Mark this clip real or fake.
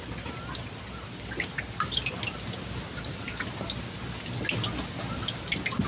real